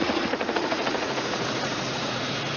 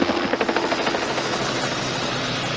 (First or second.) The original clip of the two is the second